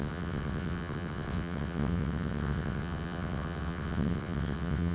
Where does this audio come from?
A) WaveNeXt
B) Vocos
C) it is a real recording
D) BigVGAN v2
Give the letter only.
A